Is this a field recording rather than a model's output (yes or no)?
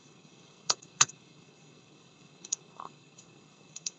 no